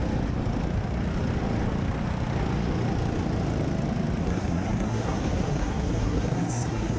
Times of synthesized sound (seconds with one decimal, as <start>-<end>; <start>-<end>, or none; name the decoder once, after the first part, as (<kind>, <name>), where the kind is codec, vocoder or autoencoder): 4.2-7.0 (codec, SNAC)